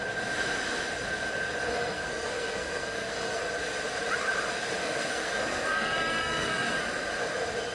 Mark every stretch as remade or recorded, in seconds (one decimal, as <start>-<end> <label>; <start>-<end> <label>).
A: 0.0-1.7 recorded; 1.7-3.4 remade; 3.4-4.8 recorded; 4.8-6.8 remade; 6.8-7.7 recorded